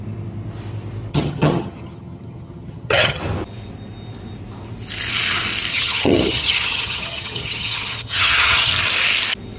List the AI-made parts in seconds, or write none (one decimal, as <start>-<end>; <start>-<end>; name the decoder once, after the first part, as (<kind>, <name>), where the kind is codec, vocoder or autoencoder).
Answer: 1.1-3.2 (vocoder, HiFi-GAN); 5.7-8.7